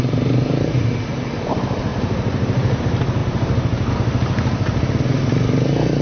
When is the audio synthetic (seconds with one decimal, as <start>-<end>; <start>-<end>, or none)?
1.9-2.8; 3.2-3.9